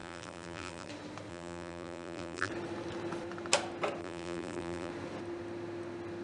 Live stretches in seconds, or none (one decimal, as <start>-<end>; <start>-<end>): 0.9-1.3; 2.5-4.0; 4.9-6.2